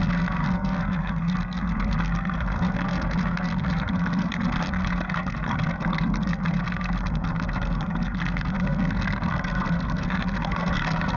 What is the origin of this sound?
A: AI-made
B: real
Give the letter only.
A